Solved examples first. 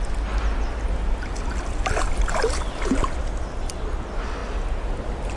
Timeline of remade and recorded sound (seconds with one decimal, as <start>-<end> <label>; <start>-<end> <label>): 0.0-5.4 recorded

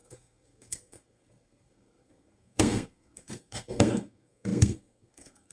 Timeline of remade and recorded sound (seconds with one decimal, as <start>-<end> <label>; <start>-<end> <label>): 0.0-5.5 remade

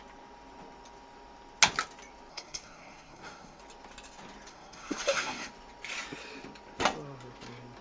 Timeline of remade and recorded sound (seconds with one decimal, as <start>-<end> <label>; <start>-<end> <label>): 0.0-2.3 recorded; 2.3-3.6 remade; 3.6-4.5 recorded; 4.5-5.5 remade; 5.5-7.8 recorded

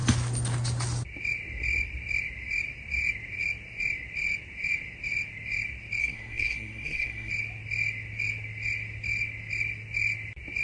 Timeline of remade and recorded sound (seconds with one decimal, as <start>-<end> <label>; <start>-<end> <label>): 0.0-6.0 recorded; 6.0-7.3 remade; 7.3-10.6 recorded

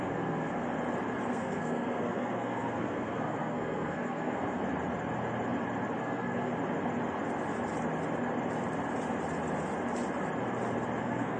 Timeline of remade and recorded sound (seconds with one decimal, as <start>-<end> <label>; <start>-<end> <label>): 0.0-0.6 remade; 0.6-1.3 recorded; 1.3-4.6 remade; 4.6-6.0 recorded; 6.0-6.5 remade; 6.5-11.0 recorded; 11.0-11.4 remade